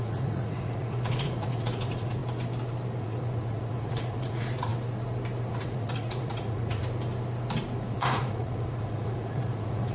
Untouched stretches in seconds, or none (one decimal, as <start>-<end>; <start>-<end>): 2.2-3.0; 4.7-5.5; 6.8-7.8